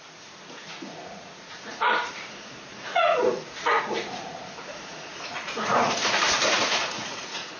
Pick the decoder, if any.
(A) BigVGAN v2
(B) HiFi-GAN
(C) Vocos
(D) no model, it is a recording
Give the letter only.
C